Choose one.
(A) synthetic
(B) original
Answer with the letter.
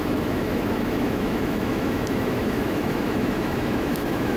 A